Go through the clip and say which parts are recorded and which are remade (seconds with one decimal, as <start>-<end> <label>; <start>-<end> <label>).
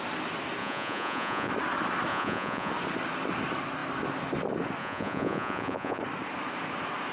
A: 0.0-0.6 recorded; 0.6-1.5 remade; 1.5-2.1 recorded; 2.1-2.7 remade; 2.7-4.8 recorded; 4.8-6.0 remade; 6.0-7.1 recorded